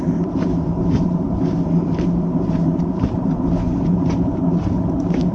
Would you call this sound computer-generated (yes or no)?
yes